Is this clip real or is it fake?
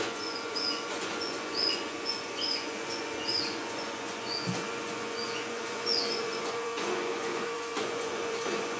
fake